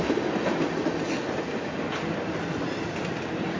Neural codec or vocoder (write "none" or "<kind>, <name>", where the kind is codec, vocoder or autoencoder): none